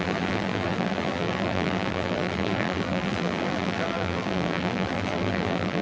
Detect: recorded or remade remade